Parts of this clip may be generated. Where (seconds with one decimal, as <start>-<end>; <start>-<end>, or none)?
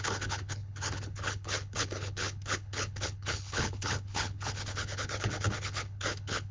0.0-6.5